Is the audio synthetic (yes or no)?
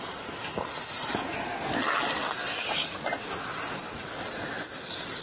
no